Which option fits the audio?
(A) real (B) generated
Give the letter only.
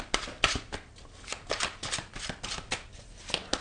A